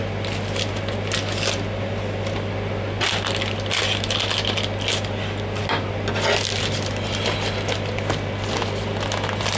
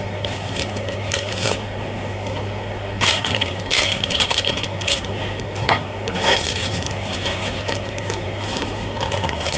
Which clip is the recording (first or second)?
first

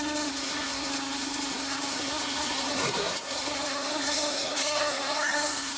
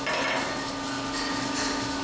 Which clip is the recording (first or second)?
second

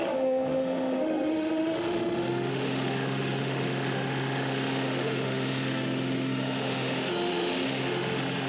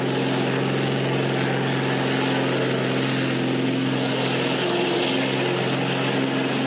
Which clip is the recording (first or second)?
second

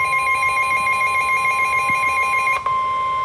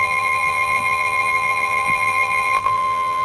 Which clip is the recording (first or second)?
first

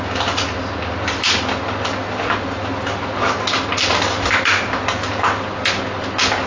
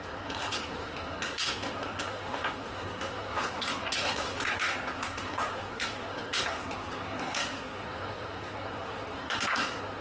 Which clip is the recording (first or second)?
first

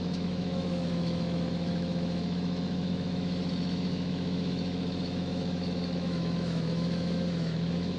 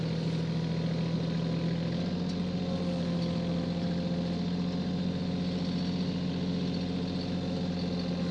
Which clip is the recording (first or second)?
second